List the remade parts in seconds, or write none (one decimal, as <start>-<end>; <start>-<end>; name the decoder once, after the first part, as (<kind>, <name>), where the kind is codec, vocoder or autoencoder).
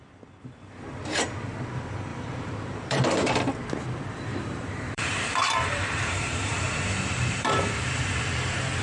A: 2.1-3.3 (vocoder, BigVGAN v2); 4.3-8.0